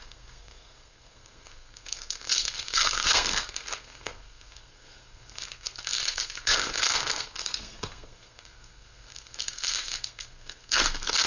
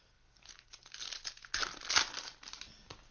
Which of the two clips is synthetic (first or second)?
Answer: first